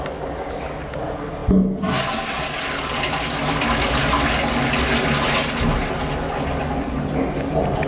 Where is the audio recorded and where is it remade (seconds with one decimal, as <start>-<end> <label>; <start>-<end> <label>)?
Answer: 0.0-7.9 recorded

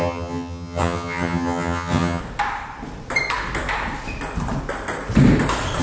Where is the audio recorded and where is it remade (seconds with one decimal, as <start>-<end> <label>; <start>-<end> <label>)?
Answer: 0.0-2.2 remade; 2.2-5.8 recorded

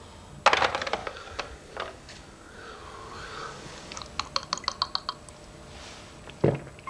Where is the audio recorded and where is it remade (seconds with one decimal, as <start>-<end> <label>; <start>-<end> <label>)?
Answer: 0.0-1.0 recorded; 1.0-4.0 remade; 4.0-6.9 recorded

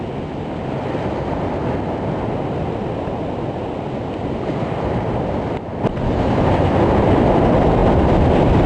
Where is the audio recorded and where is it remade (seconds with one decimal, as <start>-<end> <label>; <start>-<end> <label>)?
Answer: 0.0-8.7 recorded